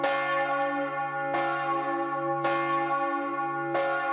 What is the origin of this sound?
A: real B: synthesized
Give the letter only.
A